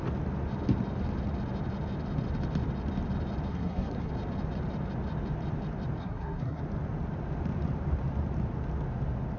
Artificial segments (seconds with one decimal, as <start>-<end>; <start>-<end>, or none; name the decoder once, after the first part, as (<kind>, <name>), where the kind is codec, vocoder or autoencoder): 3.5-4.1 (codec, SNAC); 6.0-6.6